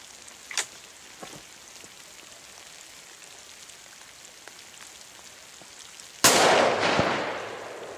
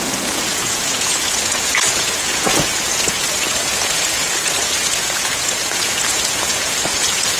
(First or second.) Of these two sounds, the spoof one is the second